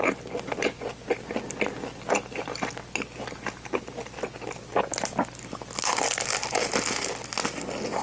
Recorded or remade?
recorded